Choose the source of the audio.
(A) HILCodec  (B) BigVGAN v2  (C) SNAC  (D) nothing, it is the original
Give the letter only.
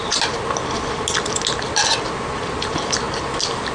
D